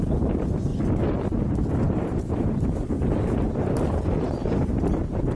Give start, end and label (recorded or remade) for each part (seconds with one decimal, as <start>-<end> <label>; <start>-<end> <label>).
0.0-0.7 remade; 0.7-1.9 recorded; 1.9-5.4 remade